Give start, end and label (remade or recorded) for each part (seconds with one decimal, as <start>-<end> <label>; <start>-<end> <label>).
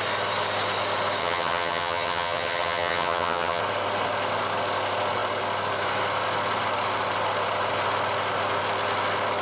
0.0-1.2 recorded; 1.2-3.6 remade; 3.6-9.4 recorded